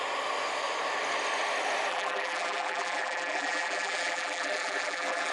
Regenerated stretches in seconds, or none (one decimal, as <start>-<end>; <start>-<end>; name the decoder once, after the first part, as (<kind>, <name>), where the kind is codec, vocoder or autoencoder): 1.9-5.3 (vocoder, BigVGAN v2)